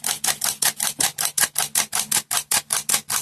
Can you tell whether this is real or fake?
real